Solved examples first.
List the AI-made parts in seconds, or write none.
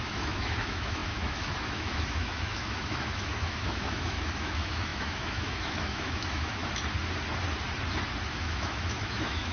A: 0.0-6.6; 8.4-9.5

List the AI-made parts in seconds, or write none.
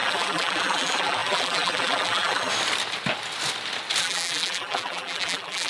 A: 0.0-2.5; 4.0-5.7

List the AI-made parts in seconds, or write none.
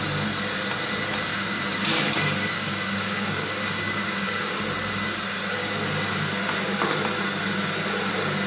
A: 1.3-4.6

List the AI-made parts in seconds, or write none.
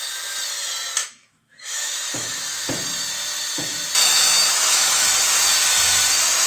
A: 1.0-2.7; 4.0-5.0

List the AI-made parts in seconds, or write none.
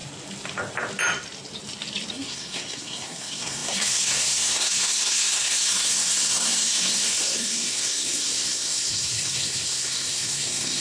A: 2.1-10.8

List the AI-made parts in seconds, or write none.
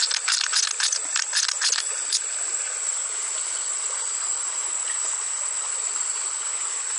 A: none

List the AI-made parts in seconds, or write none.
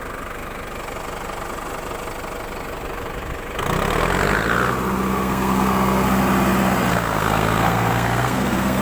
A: 5.1-6.2; 6.9-8.8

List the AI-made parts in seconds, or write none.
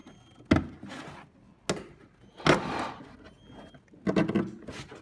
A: none